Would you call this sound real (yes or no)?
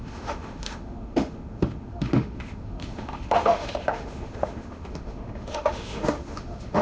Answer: no